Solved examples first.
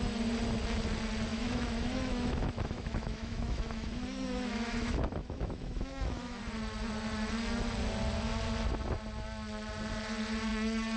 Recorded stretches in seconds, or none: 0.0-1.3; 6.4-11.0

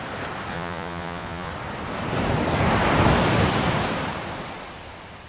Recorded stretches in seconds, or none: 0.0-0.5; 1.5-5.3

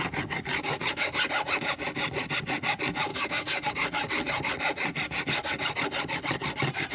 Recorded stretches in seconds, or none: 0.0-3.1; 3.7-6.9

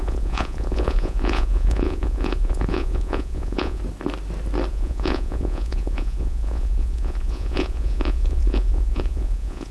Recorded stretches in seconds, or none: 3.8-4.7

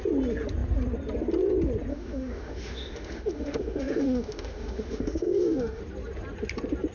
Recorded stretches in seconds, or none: 0.0-1.9; 5.8-6.9

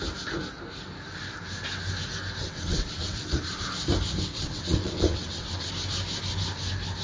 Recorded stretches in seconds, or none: 0.0-2.4; 3.6-4.3; 5.7-7.0

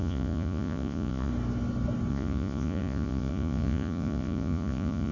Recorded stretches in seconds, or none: 1.3-2.1